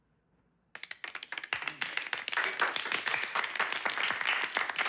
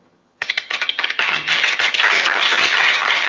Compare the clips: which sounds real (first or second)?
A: first